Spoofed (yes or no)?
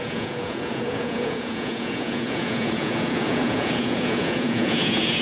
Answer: yes